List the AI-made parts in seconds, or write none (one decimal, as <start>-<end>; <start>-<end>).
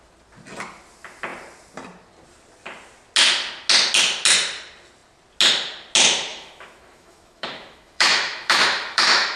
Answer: 6.3-9.4